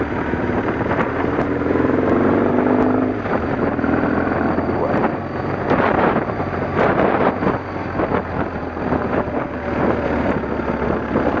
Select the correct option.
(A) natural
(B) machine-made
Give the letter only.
B